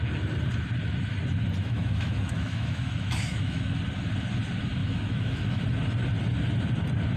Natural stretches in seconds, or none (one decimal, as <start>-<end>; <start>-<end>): 0.0-1.6; 3.7-4.8; 5.6-7.2